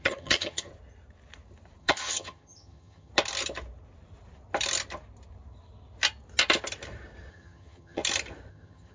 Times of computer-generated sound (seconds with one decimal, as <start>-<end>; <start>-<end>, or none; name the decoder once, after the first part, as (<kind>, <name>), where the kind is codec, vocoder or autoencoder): 0.0-0.7 (vocoder, HiFi-GAN); 1.8-3.1; 7.3-8.0; 8.5-8.9